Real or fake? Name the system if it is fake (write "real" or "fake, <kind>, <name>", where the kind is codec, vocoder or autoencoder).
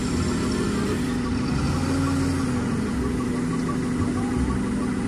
real